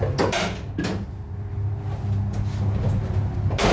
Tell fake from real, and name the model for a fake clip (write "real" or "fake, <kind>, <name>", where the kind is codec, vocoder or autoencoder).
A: real